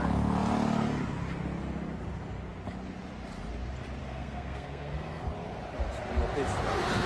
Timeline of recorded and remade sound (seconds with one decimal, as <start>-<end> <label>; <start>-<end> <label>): 0.0-4.0 recorded; 4.0-5.2 remade; 5.2-7.1 recorded